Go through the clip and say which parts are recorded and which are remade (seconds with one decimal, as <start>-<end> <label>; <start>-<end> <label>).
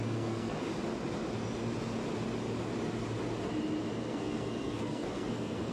0.0-0.7 remade; 0.7-4.0 recorded; 4.0-5.7 remade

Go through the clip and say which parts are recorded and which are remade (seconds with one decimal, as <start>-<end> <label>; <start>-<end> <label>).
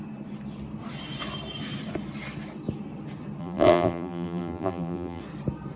0.0-3.4 recorded; 3.4-5.2 remade; 5.2-5.8 recorded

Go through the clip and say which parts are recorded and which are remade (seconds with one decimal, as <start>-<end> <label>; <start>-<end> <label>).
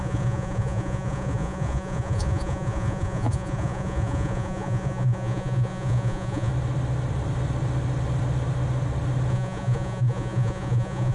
0.0-6.5 remade; 6.5-9.3 recorded; 9.3-11.1 remade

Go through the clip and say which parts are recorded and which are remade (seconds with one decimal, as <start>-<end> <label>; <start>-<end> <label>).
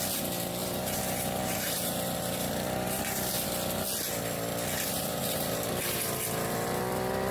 0.0-0.6 recorded; 0.6-3.3 remade; 3.3-4.9 recorded; 4.9-6.2 remade; 6.2-7.3 recorded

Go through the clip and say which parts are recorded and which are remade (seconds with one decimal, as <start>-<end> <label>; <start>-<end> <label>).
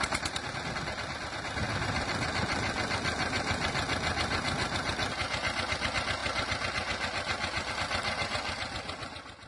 0.0-9.5 recorded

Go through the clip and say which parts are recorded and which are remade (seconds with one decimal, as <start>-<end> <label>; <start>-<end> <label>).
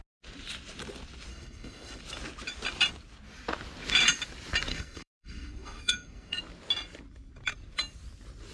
0.0-1.3 recorded; 1.3-2.0 remade; 2.0-4.7 recorded; 4.7-6.4 remade; 6.4-8.5 recorded